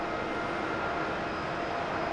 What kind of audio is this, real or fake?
real